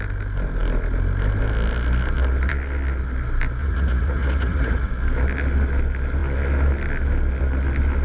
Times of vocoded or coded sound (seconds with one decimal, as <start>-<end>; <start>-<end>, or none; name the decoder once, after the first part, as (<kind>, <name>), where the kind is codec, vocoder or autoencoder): 3.6-4.9 (vocoder, Vocos)